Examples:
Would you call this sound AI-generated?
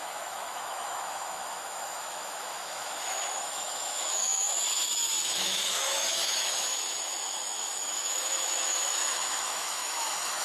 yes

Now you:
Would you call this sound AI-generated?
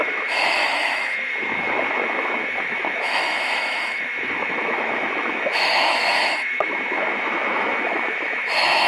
yes